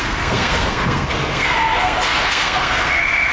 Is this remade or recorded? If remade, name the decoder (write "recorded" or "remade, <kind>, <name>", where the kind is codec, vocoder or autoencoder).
remade, codec, SNAC